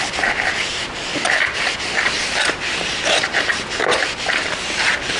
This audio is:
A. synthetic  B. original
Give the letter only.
B